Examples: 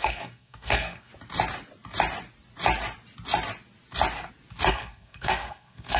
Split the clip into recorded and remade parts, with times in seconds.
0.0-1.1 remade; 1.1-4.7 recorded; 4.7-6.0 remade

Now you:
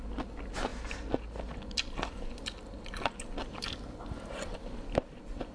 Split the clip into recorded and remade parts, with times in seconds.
0.0-5.5 recorded

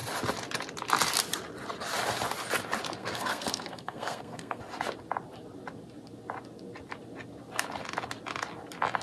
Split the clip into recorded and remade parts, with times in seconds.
0.0-3.0 recorded; 3.0-4.6 remade; 4.6-9.0 recorded

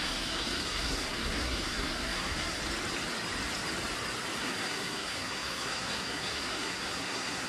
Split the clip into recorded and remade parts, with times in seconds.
0.0-2.6 remade; 2.6-4.4 recorded; 4.4-7.5 remade